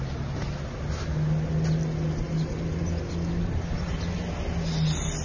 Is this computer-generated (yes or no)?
no